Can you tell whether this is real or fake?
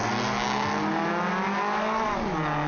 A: real